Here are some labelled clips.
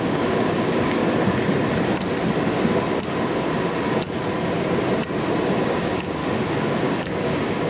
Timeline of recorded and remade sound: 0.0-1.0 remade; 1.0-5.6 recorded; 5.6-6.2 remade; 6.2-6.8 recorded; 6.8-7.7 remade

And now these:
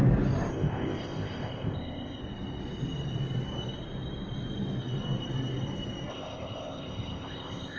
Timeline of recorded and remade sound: 0.0-0.5 recorded; 0.5-2.2 remade; 2.2-6.1 recorded; 6.1-7.8 remade

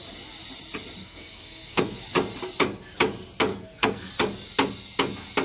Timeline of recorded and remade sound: 0.0-1.0 recorded; 1.0-2.0 remade; 2.0-3.5 recorded; 3.5-4.1 remade; 4.1-5.4 recorded

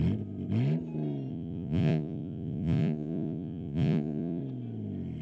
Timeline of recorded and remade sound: 0.0-1.3 recorded; 1.3-4.4 remade; 4.4-5.2 recorded

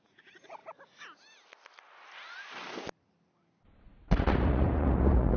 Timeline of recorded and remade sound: 0.0-0.6 remade; 0.6-3.8 recorded; 3.8-5.4 remade

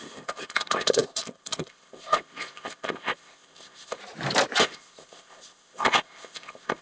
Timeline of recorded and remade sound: 0.0-4.0 remade; 4.0-4.6 recorded; 4.6-6.8 remade

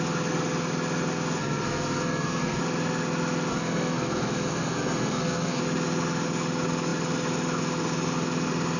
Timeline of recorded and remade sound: 0.0-1.4 recorded; 1.4-2.6 remade; 2.6-3.5 recorded; 3.5-5.6 remade; 5.6-8.8 recorded